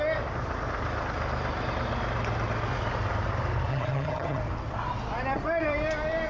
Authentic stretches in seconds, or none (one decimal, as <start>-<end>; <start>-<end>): 0.0-3.7; 4.4-6.3